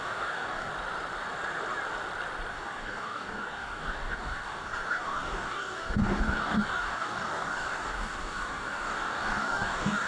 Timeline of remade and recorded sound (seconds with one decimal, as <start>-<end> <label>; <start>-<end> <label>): 0.0-0.7 remade; 0.7-2.5 recorded; 2.5-10.1 remade